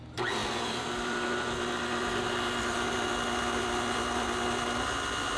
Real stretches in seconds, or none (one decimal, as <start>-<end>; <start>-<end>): 0.0-5.4